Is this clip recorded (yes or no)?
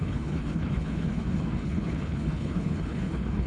no